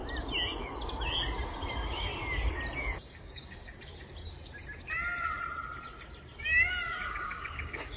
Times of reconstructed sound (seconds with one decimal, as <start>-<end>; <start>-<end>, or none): 1.7-2.1; 2.8-3.6; 6.4-8.0